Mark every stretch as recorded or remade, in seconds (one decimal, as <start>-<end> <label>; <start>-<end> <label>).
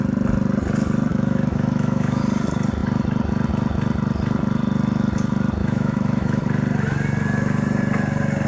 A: 0.0-1.1 recorded; 1.1-2.2 remade; 2.2-5.6 recorded; 5.6-6.4 remade; 6.4-8.5 recorded